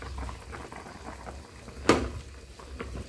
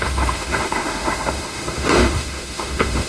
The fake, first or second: second